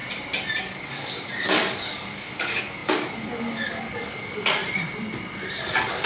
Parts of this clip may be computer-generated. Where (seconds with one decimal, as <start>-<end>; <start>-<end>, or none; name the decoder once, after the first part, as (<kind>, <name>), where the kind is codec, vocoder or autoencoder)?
0.6-4.6 (codec, DAC); 5.6-6.1

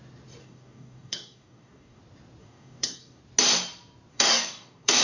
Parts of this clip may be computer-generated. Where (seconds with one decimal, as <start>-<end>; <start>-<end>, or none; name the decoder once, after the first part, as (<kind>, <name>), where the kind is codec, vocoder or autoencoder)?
0.4-2.0 (codec, DAC); 2.4-3.2; 4.1-5.0

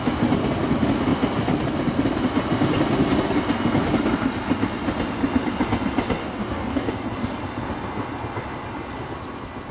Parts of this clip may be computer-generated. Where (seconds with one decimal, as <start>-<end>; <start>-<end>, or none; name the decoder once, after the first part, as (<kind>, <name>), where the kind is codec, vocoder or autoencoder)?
6.2-6.9 (codec, DAC)